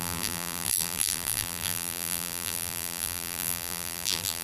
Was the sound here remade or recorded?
remade